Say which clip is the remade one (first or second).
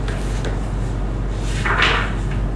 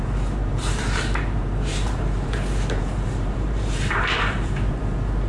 second